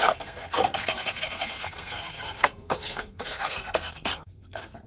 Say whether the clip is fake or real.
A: fake